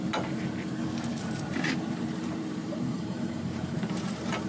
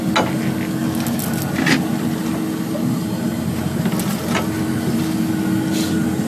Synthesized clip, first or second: first